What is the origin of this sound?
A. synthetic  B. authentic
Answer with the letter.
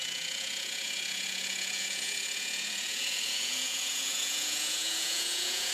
A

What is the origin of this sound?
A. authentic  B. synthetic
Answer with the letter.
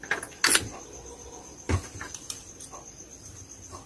A